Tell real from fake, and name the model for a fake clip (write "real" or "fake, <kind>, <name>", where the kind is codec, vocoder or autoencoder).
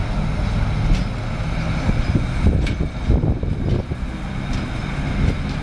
real